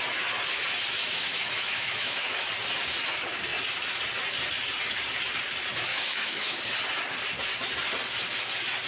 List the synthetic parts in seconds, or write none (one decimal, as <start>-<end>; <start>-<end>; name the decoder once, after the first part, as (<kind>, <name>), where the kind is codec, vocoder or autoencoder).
1.0-2.5 (autoencoder, DAC-VAE); 5.9-6.6